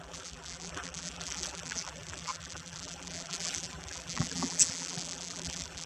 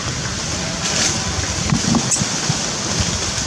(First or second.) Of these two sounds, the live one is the second